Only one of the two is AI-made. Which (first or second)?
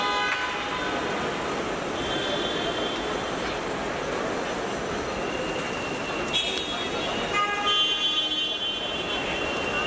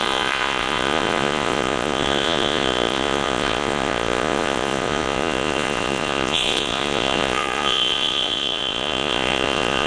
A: second